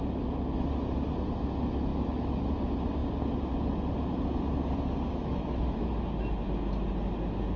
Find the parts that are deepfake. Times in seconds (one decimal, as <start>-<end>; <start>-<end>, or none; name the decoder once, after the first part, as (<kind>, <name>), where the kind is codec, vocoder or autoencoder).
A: 1.9-2.5 (autoencoder, DAC-VAE); 5.2-5.9